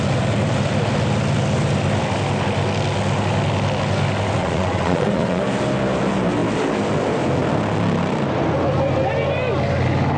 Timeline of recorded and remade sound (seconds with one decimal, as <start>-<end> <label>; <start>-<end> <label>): 0.0-4.4 recorded; 4.4-5.4 remade; 5.4-10.2 recorded